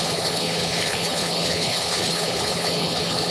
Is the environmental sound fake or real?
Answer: fake